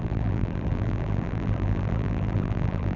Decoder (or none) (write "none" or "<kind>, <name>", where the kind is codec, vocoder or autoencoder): vocoder, BigVGAN v2